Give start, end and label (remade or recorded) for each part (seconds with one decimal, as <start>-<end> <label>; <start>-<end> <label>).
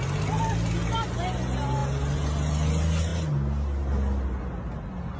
0.0-5.2 recorded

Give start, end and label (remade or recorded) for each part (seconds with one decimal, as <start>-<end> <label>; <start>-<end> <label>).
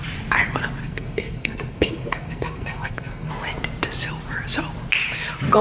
0.0-0.8 recorded; 0.8-3.3 remade; 3.3-5.6 recorded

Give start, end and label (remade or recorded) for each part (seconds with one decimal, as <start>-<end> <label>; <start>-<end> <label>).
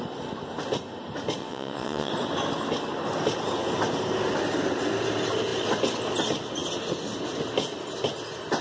0.0-1.4 recorded; 1.4-2.1 remade; 2.1-8.6 recorded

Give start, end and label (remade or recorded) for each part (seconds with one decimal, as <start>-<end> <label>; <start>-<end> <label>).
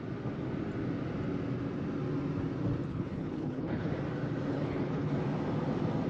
0.0-2.9 recorded; 2.9-3.9 remade; 3.9-4.5 recorded; 4.5-5.1 remade; 5.1-6.1 recorded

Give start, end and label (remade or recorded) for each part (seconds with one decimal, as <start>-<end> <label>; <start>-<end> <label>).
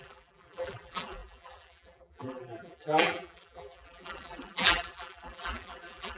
0.0-6.2 remade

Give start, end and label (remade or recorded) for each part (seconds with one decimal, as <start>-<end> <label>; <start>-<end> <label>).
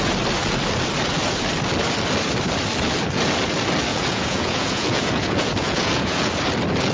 0.0-3.9 recorded; 3.9-6.3 remade; 6.3-6.9 recorded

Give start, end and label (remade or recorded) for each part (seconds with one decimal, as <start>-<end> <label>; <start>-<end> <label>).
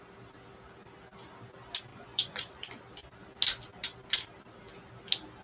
0.0-1.9 recorded; 1.9-2.8 remade; 2.8-5.4 recorded